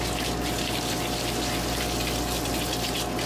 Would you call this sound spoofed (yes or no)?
no